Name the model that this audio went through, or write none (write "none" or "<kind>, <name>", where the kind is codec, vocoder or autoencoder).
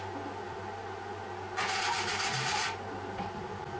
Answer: none